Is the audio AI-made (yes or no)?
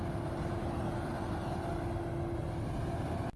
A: no